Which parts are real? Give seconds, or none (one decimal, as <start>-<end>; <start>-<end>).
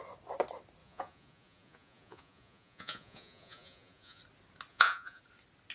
0.0-0.8; 4.2-4.7; 5.2-5.7